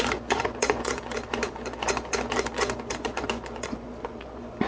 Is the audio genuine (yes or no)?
no